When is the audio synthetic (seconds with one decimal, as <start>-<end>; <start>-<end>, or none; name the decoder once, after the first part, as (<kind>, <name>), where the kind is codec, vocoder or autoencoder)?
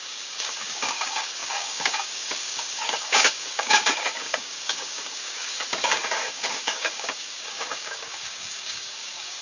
0.0-9.4 (codec, DAC)